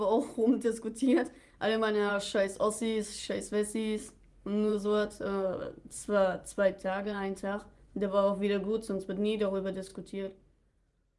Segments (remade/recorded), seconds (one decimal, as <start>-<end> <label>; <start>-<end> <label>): 0.0-2.1 recorded; 2.1-3.5 remade; 3.5-4.7 recorded; 4.7-7.9 remade; 7.9-11.2 recorded

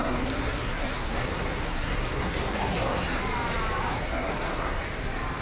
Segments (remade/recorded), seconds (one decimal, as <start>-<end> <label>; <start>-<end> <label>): 0.0-3.2 remade; 3.2-3.9 recorded; 3.9-4.8 remade; 4.8-5.4 recorded

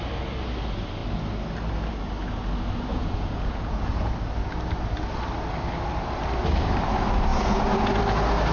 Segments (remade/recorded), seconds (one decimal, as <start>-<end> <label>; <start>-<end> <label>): 0.0-2.9 recorded; 2.9-4.1 remade; 4.1-7.3 recorded; 7.3-8.0 remade; 8.0-8.5 recorded

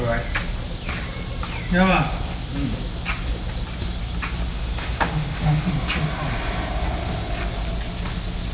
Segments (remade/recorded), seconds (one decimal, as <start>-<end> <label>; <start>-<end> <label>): 0.0-4.5 recorded; 4.5-5.7 remade; 5.7-8.5 recorded

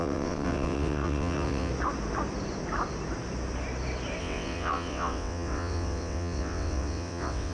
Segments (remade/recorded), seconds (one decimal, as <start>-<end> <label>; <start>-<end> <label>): 0.0-1.7 remade; 1.7-4.2 recorded; 4.2-7.5 remade